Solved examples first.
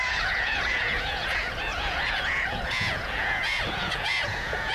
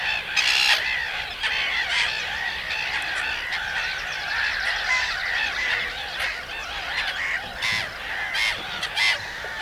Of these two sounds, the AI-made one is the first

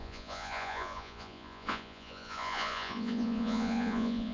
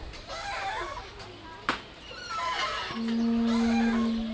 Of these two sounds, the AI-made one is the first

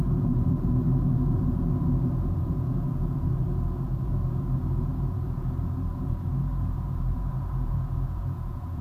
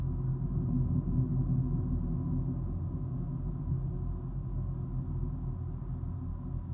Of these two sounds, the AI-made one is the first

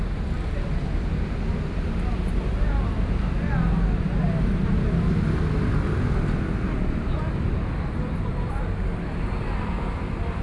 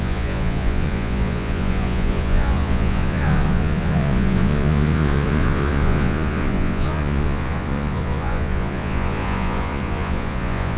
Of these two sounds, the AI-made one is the second